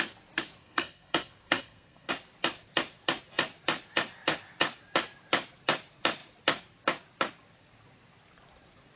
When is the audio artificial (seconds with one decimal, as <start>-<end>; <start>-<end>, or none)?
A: 0.6-2.1